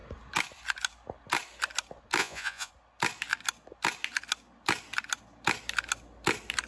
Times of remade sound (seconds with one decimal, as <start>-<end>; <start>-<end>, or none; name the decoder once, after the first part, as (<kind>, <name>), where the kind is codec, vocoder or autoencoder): 2.2-2.7 (vocoder, Vocos)